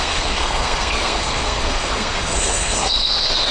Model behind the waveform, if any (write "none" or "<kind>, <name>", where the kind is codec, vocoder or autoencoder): codec, SNAC